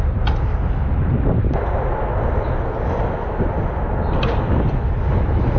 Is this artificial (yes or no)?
no